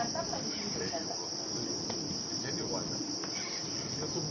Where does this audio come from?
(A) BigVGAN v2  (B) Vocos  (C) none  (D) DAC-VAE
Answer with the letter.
A